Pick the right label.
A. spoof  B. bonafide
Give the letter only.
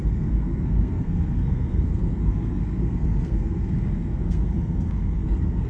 A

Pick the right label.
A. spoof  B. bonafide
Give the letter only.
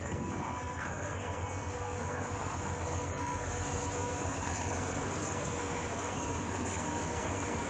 A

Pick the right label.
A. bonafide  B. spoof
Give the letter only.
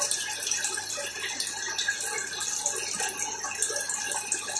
A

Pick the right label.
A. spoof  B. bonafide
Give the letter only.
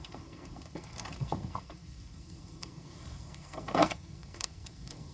A